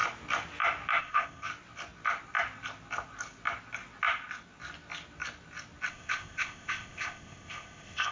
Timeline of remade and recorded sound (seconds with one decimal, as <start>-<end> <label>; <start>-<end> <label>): 0.0-1.0 recorded; 1.0-1.5 remade; 1.5-5.9 recorded; 5.9-8.1 remade